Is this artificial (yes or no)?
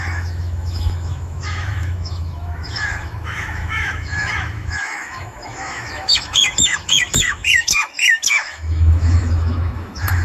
yes